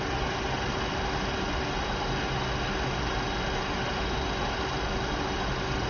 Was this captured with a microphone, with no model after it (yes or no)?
yes